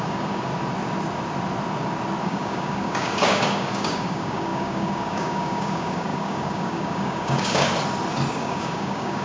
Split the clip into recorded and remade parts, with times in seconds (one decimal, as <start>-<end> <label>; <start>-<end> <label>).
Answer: 0.0-0.5 remade; 0.5-2.2 recorded; 2.2-7.7 remade; 7.7-8.3 recorded; 8.3-9.2 remade